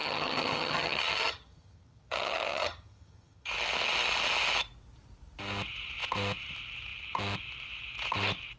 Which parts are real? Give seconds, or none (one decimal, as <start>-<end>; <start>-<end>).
3.5-8.6